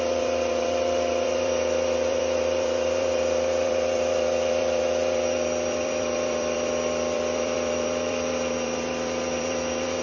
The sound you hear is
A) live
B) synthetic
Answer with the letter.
B